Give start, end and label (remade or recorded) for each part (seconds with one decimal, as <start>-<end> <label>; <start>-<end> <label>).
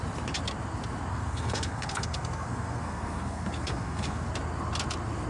0.0-1.1 recorded; 1.1-4.3 remade; 4.3-5.3 recorded